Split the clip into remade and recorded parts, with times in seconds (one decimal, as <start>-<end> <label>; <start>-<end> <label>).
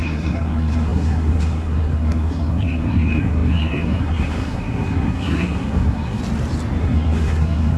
0.0-6.2 remade; 6.2-6.8 recorded; 6.8-7.8 remade